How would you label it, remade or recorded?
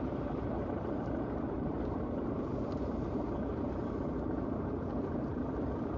remade